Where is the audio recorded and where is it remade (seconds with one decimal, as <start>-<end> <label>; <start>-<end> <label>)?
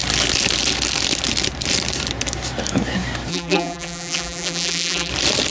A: 0.0-3.3 recorded; 3.3-5.1 remade; 5.1-5.5 recorded